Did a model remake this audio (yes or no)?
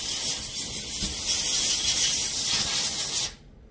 no